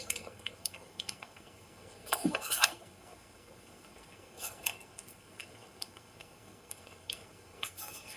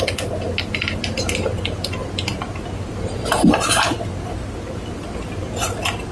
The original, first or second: second